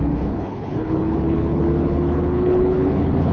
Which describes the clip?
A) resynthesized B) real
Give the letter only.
A